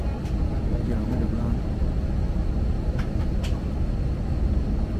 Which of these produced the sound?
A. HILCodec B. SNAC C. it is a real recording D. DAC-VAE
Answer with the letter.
C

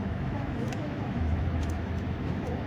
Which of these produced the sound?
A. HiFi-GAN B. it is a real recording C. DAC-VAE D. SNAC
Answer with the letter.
C